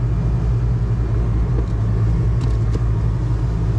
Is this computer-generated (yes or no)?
no